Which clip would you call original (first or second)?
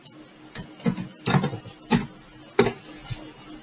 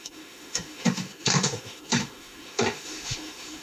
first